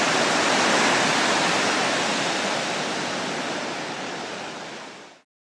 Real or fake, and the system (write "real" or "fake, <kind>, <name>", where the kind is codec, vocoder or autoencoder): real